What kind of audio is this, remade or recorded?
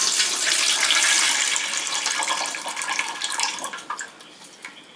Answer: recorded